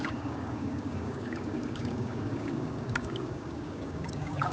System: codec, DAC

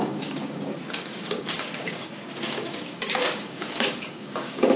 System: codec, DAC